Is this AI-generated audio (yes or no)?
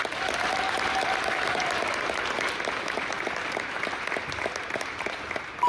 no